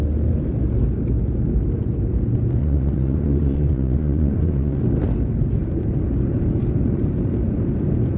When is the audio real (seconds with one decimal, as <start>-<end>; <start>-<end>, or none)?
0.0-2.6; 4.8-8.2